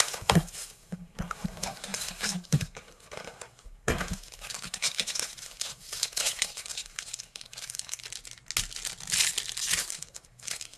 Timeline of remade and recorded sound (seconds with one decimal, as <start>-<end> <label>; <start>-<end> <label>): 0.0-8.0 remade; 8.0-9.8 recorded; 9.8-10.8 remade